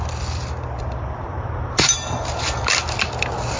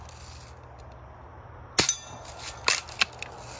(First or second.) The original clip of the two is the second